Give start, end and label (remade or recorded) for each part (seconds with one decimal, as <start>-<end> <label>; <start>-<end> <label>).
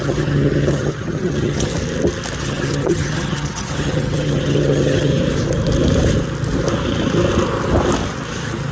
0.0-1.7 remade; 1.7-2.4 recorded; 2.4-5.1 remade; 5.1-8.7 recorded